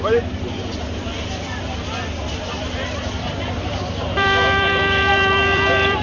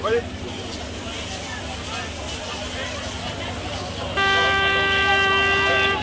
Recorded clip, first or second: second